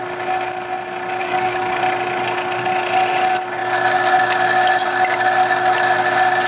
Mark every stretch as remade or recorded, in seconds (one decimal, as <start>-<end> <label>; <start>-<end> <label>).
0.0-1.2 recorded; 1.2-1.8 remade; 1.8-6.5 recorded